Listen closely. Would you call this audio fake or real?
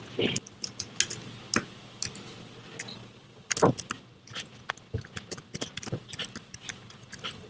real